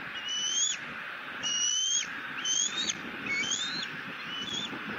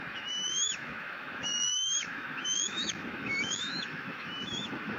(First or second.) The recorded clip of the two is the first